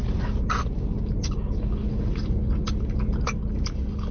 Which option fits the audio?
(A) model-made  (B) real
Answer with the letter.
B